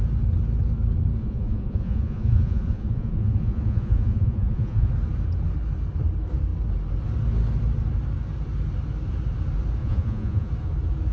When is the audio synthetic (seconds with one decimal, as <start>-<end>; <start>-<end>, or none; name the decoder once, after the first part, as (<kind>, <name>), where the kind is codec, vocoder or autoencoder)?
1.2-4.9 (vocoder, Vocos); 9.8-10.5